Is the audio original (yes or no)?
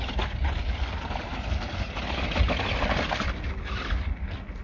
yes